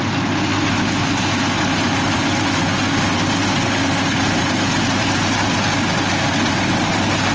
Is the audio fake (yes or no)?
no